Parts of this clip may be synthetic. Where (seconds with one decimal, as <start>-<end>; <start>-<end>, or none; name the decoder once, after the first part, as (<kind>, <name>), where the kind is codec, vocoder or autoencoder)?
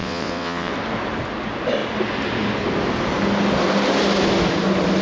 0.0-0.7 (vocoder, WaveNeXt)